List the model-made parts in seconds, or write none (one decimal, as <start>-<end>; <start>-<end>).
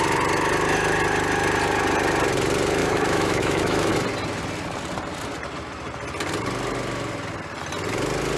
2.8-3.9